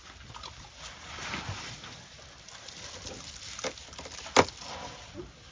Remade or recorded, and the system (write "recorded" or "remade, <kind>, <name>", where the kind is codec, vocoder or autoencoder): recorded